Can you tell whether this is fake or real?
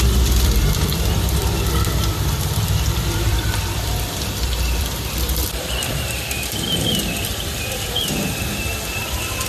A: fake